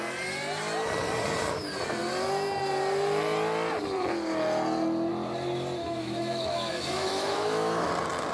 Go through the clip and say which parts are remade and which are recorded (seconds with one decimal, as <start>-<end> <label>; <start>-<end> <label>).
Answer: 0.0-5.8 recorded; 5.8-7.9 remade; 7.9-8.3 recorded